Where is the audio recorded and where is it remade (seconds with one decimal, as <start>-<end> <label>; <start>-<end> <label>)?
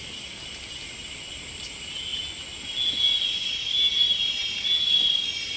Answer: 0.0-5.6 recorded